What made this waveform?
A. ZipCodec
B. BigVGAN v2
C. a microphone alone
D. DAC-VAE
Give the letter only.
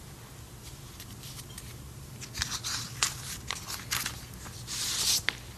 C